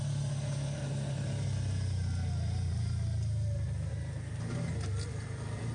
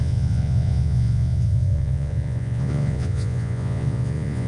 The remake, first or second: second